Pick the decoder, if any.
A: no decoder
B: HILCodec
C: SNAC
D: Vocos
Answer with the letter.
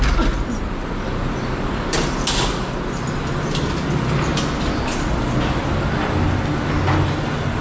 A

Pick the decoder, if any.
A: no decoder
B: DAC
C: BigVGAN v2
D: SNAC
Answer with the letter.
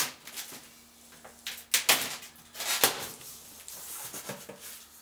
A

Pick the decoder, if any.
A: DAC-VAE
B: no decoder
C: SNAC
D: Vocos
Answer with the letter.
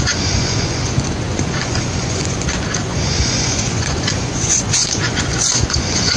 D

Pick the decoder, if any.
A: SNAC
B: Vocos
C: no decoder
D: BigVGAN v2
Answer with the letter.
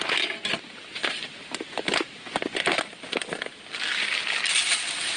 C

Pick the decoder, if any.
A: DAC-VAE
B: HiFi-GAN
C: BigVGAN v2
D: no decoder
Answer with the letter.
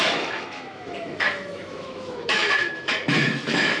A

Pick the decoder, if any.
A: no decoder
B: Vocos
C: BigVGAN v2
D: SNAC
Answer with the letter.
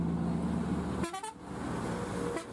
A